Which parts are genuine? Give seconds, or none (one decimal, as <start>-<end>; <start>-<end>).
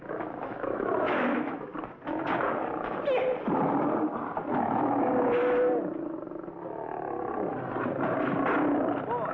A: 1.7-4.5; 5.4-9.3